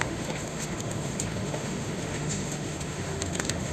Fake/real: fake